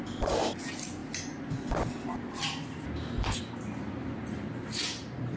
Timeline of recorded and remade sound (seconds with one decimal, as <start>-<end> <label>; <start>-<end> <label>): 0.0-5.4 recorded